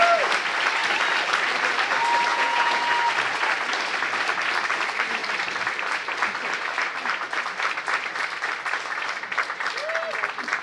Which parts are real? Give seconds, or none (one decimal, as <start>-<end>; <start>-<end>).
0.0-2.3; 2.8-10.6